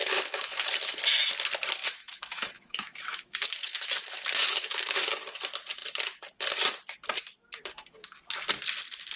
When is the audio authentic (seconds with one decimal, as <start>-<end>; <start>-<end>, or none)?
0.7-1.8; 5.0-9.2